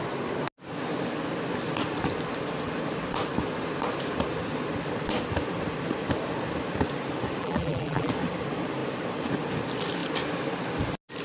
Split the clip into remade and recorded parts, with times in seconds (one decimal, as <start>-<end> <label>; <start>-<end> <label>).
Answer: 0.0-7.4 recorded; 7.4-8.1 remade; 8.1-11.2 recorded